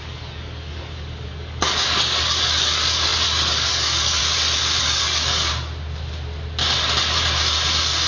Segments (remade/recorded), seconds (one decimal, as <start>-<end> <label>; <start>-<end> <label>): 0.0-4.2 remade; 4.2-4.8 recorded; 4.8-5.5 remade; 5.5-8.1 recorded